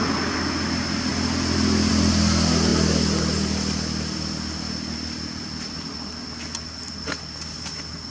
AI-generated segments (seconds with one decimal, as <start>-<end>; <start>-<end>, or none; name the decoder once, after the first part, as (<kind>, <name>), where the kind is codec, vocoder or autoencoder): none